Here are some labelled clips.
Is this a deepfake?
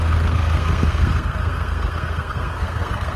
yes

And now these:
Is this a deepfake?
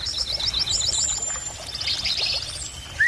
no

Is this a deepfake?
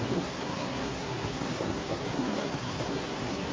yes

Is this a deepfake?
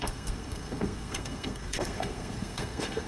yes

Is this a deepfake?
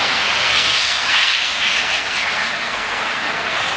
yes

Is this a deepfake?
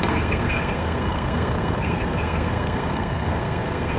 yes